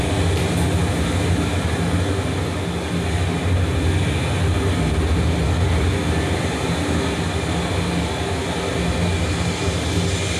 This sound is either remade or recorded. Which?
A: recorded